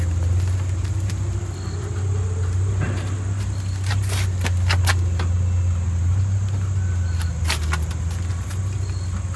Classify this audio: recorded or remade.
recorded